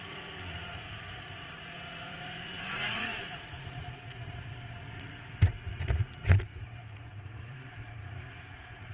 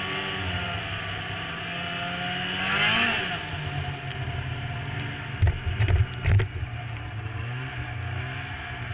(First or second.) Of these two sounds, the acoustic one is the second